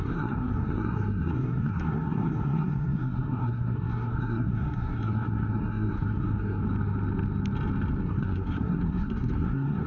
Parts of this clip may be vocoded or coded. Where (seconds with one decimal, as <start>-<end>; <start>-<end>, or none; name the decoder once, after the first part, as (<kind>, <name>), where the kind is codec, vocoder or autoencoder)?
0.0-6.6 (codec, SNAC); 8.0-9.9